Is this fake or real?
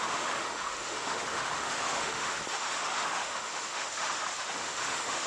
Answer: fake